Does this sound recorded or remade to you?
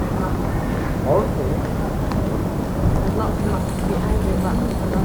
recorded